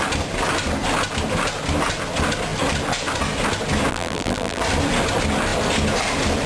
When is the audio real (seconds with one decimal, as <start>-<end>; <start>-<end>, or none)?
0.0-3.9; 4.6-6.5